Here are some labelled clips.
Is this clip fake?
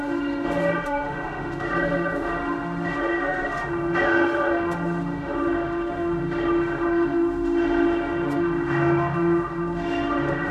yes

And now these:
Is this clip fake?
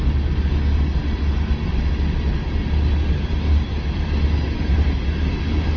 no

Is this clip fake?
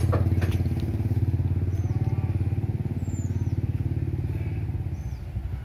no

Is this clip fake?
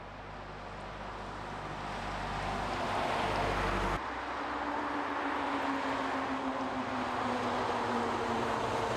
no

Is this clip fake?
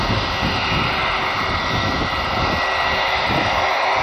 no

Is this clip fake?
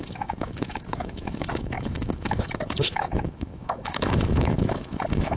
yes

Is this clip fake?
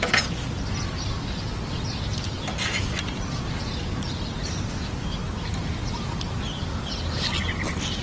no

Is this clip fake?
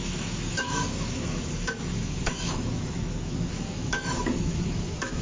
yes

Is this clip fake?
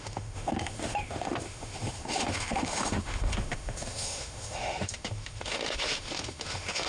yes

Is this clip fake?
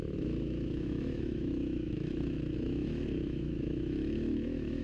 yes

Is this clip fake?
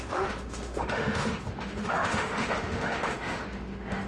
yes